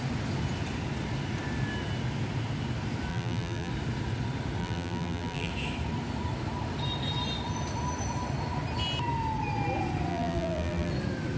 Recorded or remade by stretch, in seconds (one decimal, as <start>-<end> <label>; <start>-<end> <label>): 0.0-3.1 recorded; 3.1-3.7 remade; 3.7-4.6 recorded; 4.6-5.5 remade; 5.5-10.1 recorded; 10.1-10.9 remade; 10.9-11.4 recorded